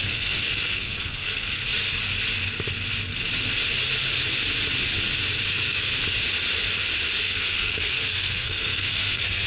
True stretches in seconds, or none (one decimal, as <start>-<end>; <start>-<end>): 1.6-5.5; 6.0-7.2